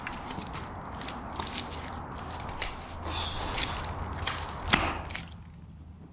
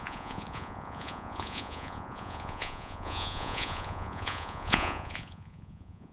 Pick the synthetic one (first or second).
second